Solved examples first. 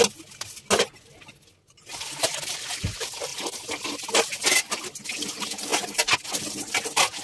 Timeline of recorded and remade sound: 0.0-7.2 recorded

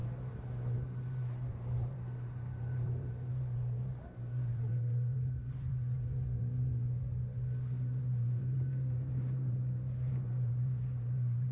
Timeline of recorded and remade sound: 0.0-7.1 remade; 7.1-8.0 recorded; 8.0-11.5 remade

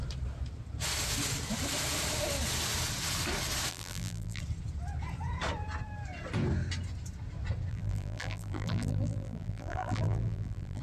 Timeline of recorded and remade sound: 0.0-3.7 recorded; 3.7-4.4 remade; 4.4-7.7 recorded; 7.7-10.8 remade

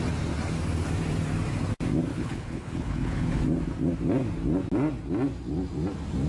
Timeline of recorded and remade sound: 0.0-2.1 recorded; 2.1-3.4 remade; 3.4-6.3 recorded

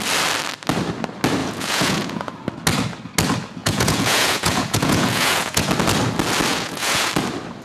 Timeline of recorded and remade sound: 0.0-1.4 recorded; 1.4-2.3 remade; 2.3-3.6 recorded; 3.6-5.7 remade; 5.7-6.5 recorded; 6.5-7.1 remade; 7.1-7.6 recorded

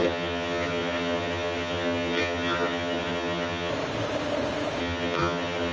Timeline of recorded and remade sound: 0.0-3.7 remade; 3.7-4.8 recorded; 4.8-5.7 remade